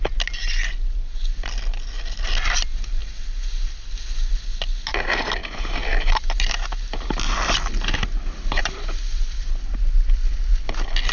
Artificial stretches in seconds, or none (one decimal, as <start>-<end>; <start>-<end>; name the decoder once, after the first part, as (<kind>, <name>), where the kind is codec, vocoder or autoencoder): none